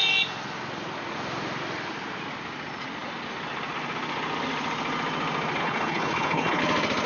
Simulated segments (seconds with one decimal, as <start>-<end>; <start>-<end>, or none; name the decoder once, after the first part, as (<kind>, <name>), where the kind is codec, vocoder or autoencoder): 5.6-6.6 (codec, HILCodec)